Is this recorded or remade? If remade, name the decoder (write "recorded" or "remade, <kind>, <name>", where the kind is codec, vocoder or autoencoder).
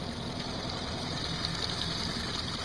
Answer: recorded